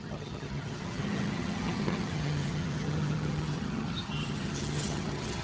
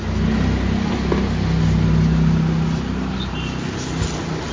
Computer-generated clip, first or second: first